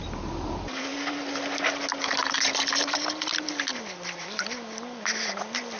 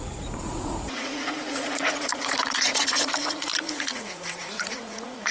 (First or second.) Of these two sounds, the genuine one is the first